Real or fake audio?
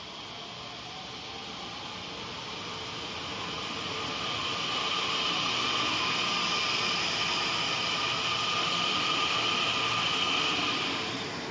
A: real